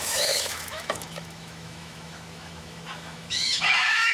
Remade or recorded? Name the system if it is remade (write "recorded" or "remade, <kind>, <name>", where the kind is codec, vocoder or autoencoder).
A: remade, autoencoder, DAC-VAE